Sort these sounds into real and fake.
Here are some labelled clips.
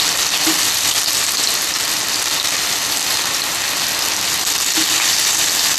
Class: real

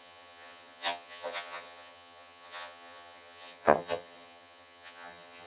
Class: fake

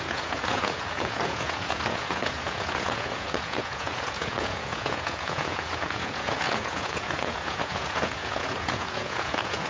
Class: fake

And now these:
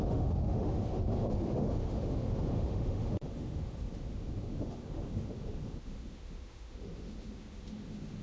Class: fake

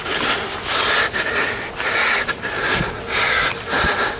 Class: real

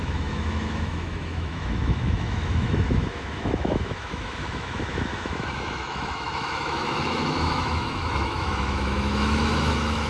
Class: fake